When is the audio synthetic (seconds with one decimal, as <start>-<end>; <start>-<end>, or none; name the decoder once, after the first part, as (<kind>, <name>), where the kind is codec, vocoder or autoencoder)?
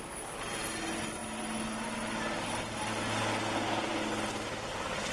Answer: none